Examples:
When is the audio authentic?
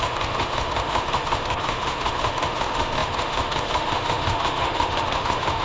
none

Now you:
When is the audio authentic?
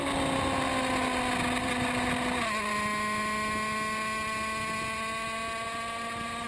0.0-6.5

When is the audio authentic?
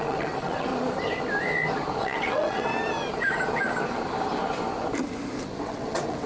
0.7-2.0; 2.7-5.6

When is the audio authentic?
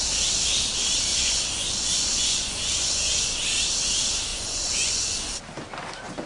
0.0-1.1; 3.4-4.3; 5.3-6.3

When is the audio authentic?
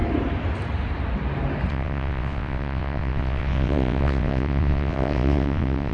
0.0-1.7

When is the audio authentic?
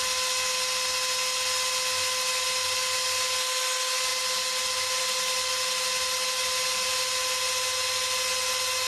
0.0-8.9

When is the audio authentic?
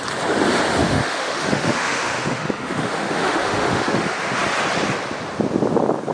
0.0-0.8; 4.4-6.1